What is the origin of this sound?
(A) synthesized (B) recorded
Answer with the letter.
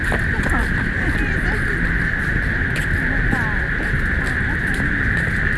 B